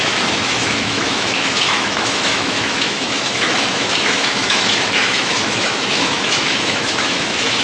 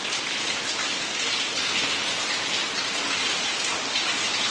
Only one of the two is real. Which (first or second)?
second